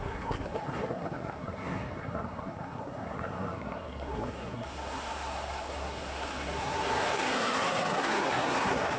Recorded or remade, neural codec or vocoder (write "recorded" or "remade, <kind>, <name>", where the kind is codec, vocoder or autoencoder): remade, codec, SNAC